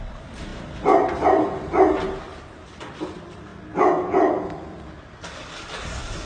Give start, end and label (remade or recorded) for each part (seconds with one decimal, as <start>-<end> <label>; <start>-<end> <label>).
0.0-3.5 remade; 3.5-5.0 recorded; 5.0-6.3 remade